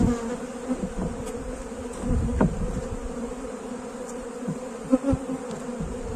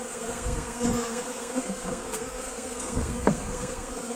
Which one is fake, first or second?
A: second